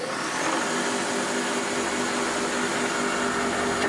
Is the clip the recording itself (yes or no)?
yes